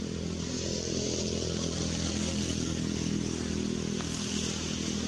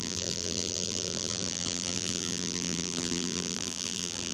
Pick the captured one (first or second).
first